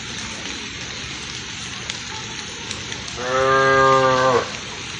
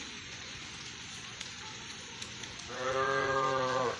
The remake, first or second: second